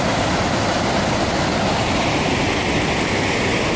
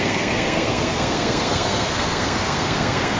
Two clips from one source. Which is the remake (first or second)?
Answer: second